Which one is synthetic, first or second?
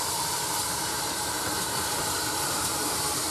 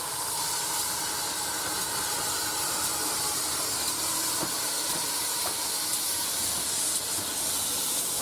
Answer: first